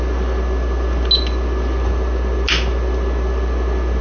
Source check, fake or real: real